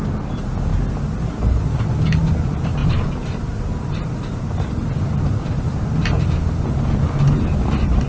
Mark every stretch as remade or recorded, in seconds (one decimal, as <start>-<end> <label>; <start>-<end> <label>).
0.0-8.1 recorded